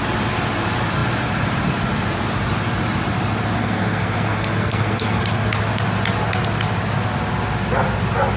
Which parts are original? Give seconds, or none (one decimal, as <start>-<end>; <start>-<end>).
0.0-3.6; 5.2-8.4